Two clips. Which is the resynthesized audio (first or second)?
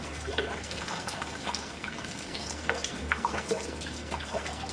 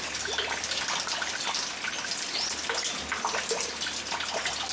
first